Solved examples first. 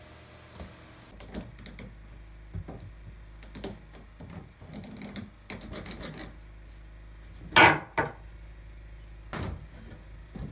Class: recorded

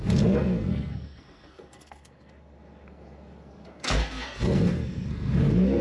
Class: remade